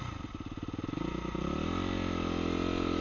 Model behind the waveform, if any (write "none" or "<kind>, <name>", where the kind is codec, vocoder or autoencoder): none